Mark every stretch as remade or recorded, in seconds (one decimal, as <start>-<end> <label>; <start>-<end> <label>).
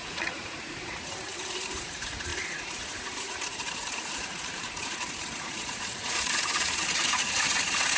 0.0-8.0 remade